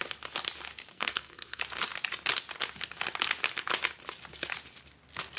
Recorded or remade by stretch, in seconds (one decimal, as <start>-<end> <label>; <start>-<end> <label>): 0.0-0.9 recorded; 0.9-1.6 remade; 1.6-5.4 recorded